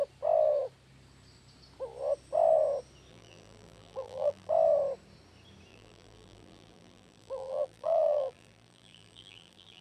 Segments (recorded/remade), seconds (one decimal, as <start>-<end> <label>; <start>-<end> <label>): 0.0-3.1 recorded; 3.1-4.5 remade; 4.5-5.7 recorded; 5.7-9.8 remade